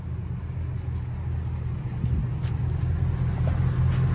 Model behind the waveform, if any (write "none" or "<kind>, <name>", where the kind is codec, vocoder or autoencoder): none